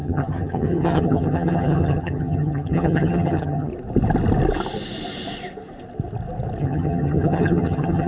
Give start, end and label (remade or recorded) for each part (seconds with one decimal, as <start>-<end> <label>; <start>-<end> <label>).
0.0-3.7 remade; 3.7-6.6 recorded; 6.6-8.1 remade